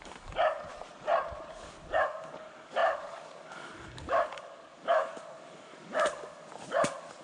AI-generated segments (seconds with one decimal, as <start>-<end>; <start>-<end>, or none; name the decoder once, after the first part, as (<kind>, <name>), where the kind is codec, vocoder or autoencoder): 0.0-0.7 (codec, DAC); 1.5-7.2